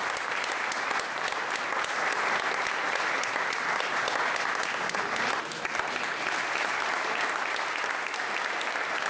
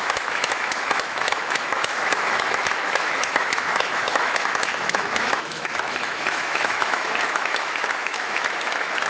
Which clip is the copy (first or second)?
second